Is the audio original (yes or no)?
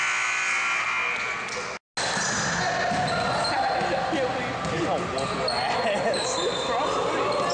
yes